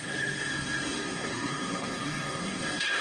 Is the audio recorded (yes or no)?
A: no